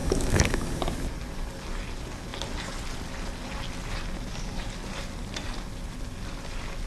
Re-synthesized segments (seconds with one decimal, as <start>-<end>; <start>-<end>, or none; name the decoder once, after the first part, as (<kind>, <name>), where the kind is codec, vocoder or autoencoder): 0.0-0.8 (codec, DAC)